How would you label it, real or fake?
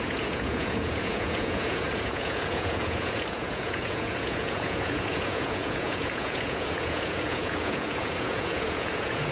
fake